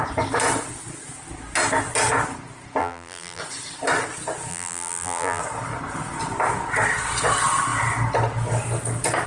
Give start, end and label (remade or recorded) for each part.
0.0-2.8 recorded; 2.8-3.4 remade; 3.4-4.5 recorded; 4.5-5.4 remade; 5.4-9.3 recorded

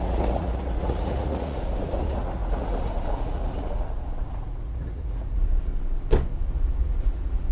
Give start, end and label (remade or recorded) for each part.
0.0-5.7 remade; 5.7-6.5 recorded; 6.5-7.5 remade

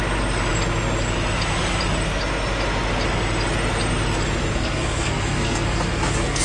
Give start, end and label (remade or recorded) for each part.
0.0-4.5 recorded; 4.5-6.4 remade

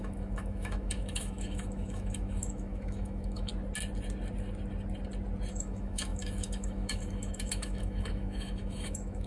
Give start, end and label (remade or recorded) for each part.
0.0-3.5 remade; 3.5-5.5 recorded; 5.5-9.3 remade

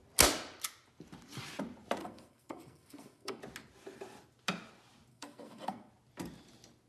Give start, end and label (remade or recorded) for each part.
0.0-2.0 recorded; 2.0-3.4 remade; 3.4-5.1 recorded; 5.1-5.9 remade; 5.9-6.9 recorded

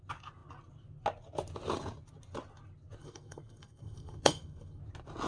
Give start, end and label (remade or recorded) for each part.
0.0-3.0 recorded; 3.0-4.8 remade; 4.8-5.3 recorded